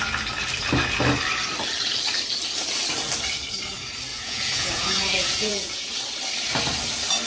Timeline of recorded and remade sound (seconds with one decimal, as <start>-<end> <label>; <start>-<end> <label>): 0.0-4.1 recorded; 4.1-5.9 remade; 5.9-7.3 recorded